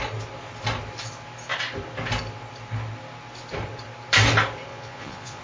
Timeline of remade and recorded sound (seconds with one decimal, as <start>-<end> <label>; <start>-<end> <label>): 0.0-4.7 recorded; 4.7-5.4 remade